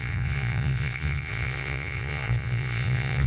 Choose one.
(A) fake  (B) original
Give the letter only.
A